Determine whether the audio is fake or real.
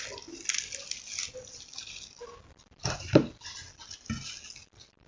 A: real